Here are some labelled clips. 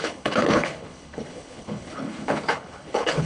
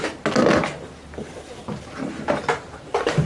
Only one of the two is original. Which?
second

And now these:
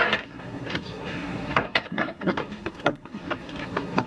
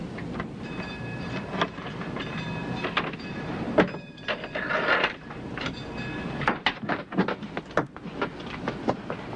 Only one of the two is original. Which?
second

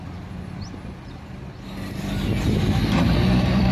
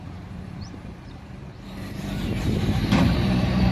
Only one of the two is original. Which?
first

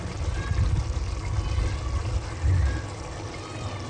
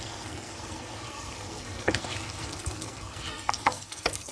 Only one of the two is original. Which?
first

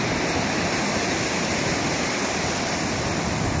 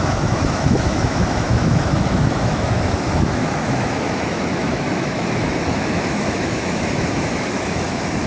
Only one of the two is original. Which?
first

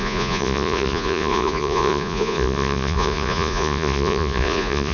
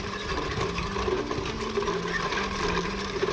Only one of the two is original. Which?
second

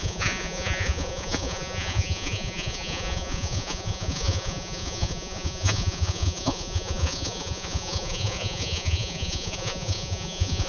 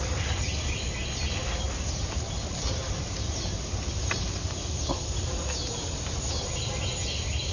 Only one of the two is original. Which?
second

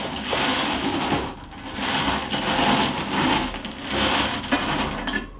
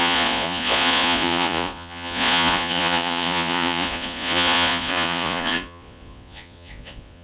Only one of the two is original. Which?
first